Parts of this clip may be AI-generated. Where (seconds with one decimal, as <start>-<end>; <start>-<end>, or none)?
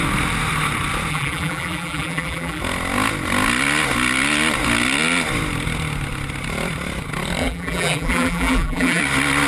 1.1-2.6; 7.4-9.0